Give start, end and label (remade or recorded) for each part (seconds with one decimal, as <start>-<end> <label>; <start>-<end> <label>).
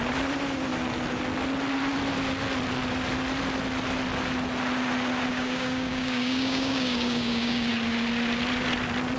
0.0-5.3 recorded; 5.3-7.7 remade; 7.7-9.2 recorded